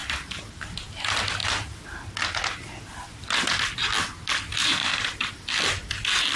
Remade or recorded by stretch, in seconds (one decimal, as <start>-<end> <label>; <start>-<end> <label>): 0.0-0.8 remade; 0.8-1.4 recorded; 1.4-2.1 remade; 2.1-4.6 recorded; 4.6-5.3 remade; 5.3-6.4 recorded